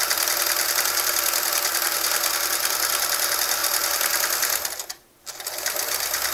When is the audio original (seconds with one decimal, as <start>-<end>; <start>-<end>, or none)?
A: 0.0-6.3